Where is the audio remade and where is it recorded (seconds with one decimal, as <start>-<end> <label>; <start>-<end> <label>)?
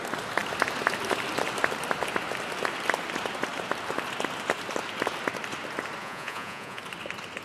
0.0-6.0 recorded; 6.0-6.8 remade; 6.8-7.4 recorded